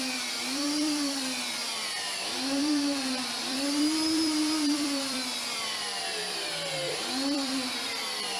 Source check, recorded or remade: remade